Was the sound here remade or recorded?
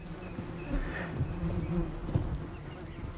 recorded